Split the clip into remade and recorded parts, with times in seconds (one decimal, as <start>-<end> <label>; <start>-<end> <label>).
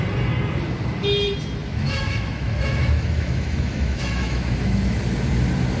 0.0-1.6 recorded; 1.6-5.0 remade; 5.0-5.8 recorded